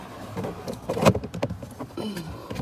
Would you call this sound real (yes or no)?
yes